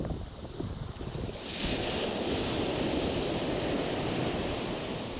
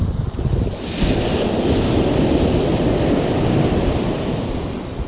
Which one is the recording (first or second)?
second